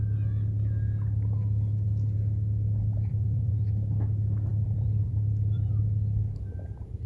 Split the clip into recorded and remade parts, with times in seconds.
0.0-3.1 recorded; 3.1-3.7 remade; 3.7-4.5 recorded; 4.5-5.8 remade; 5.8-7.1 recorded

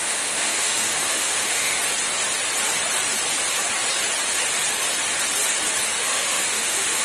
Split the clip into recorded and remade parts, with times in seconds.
0.0-1.8 remade; 1.8-6.0 recorded; 6.0-7.0 remade

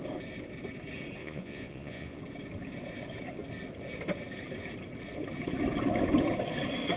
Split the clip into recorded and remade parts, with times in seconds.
0.0-1.2 recorded; 1.2-2.2 remade; 2.2-7.0 recorded

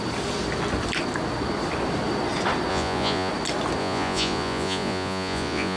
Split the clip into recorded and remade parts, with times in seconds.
0.0-2.7 recorded; 2.7-3.3 remade; 3.3-3.8 recorded; 3.8-5.8 remade

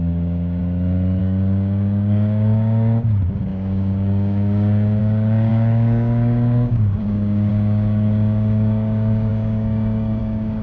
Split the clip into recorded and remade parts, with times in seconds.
0.0-0.6 remade; 0.6-1.2 recorded; 1.2-10.6 remade

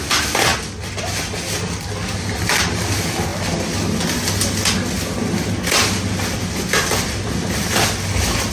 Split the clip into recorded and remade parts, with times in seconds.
0.0-8.5 recorded